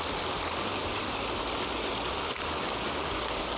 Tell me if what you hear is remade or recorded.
recorded